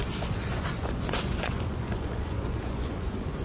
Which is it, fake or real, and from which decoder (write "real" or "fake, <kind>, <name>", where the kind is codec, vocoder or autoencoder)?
fake, vocoder, Vocos